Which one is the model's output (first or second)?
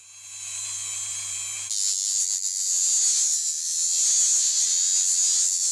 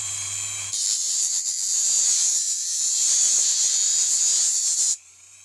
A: second